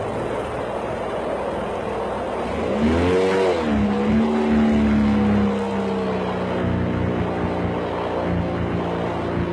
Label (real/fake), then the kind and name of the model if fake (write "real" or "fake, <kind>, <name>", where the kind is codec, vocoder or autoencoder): real